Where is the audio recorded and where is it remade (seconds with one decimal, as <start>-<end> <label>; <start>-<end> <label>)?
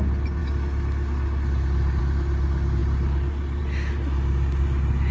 0.0-5.1 recorded